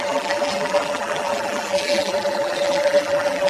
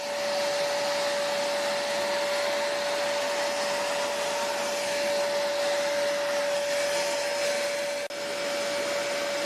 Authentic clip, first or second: second